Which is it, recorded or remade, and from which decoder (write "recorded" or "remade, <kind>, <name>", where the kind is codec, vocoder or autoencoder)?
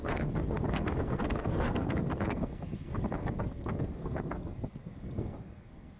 remade, codec, SNAC